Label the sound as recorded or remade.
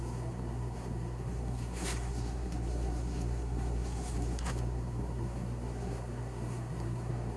remade